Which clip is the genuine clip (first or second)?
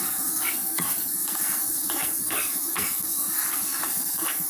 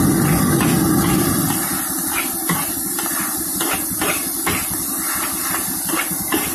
second